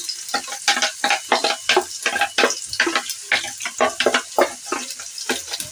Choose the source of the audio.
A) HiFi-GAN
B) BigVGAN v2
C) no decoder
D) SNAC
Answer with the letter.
C